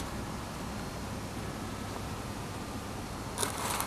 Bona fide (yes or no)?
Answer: yes